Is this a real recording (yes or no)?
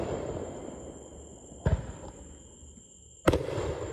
yes